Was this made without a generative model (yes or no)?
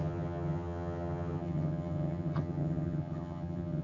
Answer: no